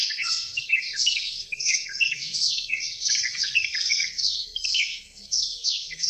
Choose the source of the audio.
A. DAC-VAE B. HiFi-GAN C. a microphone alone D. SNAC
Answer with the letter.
D